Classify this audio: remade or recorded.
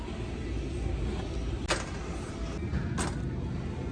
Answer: recorded